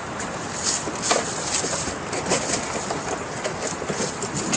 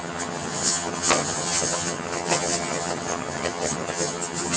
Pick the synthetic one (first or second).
second